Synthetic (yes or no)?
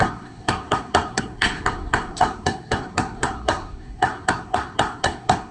yes